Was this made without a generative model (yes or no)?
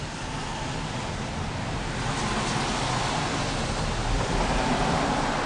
yes